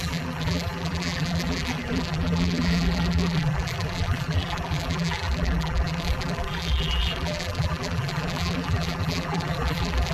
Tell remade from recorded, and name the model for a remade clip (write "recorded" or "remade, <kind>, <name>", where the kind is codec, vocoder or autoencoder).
remade, vocoder, BigVGAN v2